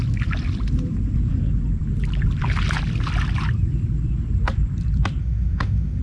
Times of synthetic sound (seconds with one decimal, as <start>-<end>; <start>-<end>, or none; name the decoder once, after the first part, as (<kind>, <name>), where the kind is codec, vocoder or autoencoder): 5.2-6.0 (autoencoder, DAC-VAE)